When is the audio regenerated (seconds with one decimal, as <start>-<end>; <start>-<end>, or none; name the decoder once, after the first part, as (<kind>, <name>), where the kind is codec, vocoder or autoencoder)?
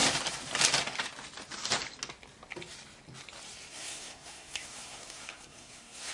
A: 3.7-6.1 (codec, SNAC)